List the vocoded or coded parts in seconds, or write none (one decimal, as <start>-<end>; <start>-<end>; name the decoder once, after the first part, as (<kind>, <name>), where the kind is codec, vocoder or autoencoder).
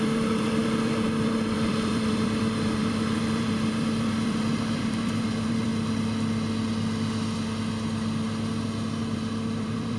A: 0.0-5.7 (vocoder, BigVGAN v2); 9.0-10.0